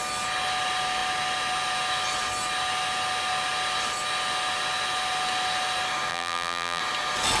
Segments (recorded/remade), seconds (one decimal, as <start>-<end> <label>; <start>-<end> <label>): 0.0-6.1 recorded; 6.1-6.8 remade; 6.8-7.4 recorded